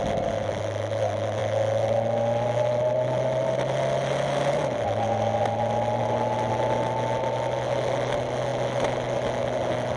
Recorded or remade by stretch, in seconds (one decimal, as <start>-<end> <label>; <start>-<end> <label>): 0.0-10.0 recorded